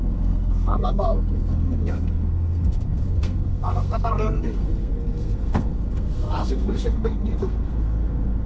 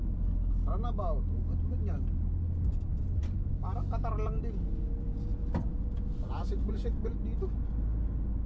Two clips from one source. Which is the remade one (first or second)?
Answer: first